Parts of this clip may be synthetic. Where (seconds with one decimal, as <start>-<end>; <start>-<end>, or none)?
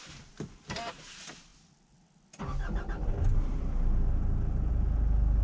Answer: none